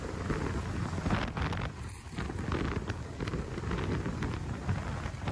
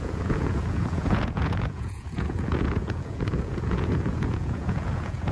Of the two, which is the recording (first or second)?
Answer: first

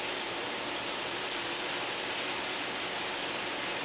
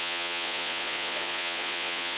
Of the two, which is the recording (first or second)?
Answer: first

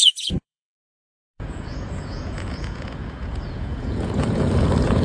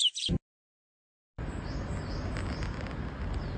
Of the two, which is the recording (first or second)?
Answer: second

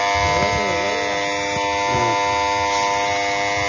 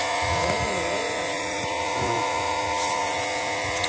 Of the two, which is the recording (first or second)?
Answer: first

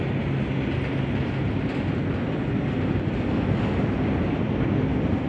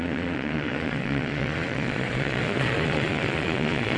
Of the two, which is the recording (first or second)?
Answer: first